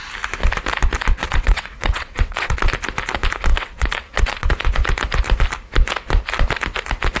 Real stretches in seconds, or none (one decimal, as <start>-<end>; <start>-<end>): 0.0-1.2; 2.7-3.5; 4.5-7.2